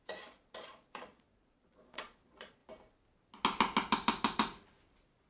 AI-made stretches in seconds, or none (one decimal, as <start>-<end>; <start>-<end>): 0.0-2.6

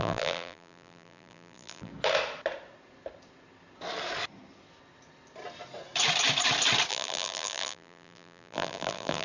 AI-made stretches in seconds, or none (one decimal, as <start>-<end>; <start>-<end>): 0.0-1.9; 6.9-9.2

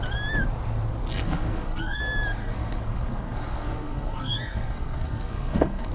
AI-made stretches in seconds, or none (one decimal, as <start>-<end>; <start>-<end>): 1.1-2.0; 2.4-5.9

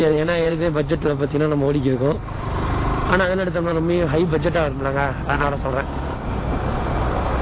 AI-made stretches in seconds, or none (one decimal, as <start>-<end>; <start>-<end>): 0.0-0.7

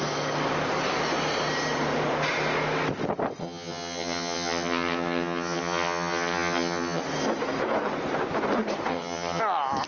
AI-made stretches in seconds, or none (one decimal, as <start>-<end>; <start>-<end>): 3.4-7.0; 8.9-9.4